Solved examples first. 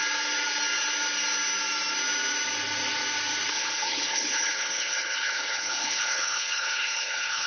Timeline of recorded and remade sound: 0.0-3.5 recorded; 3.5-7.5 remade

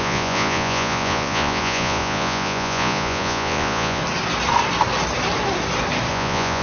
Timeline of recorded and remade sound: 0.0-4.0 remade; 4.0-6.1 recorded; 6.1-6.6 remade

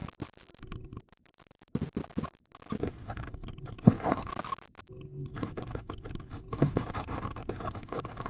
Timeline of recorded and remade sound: 0.0-0.6 recorded; 0.6-1.0 remade; 1.0-2.8 recorded; 2.8-4.3 remade; 4.3-4.9 recorded; 4.9-8.3 remade